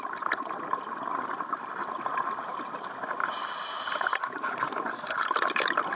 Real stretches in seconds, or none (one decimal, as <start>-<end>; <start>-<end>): 0.0-5.9